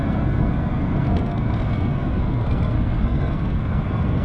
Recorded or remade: remade